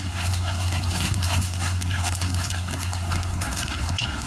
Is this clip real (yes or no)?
no